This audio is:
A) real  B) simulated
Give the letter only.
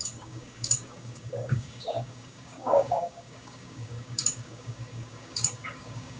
B